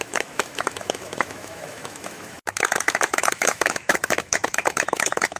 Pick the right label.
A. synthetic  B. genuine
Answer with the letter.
A